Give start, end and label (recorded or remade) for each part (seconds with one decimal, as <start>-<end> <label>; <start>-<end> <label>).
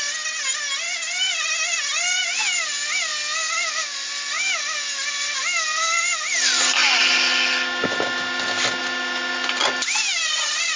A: 0.0-10.8 recorded